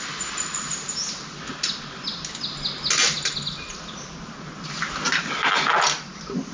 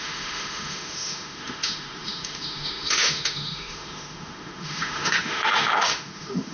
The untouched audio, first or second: first